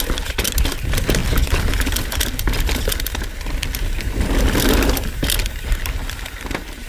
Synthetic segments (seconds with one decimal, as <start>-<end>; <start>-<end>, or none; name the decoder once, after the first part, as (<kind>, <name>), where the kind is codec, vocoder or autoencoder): none